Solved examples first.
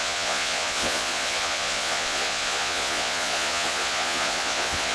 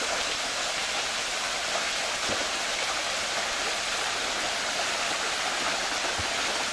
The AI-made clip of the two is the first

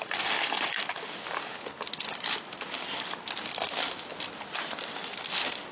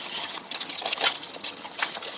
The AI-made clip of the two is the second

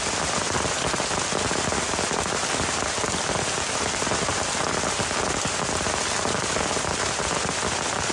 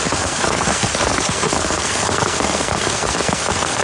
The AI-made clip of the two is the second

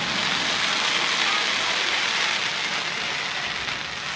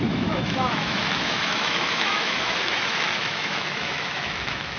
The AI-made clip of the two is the second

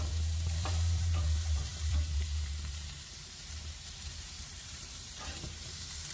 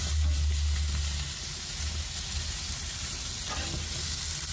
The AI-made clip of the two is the first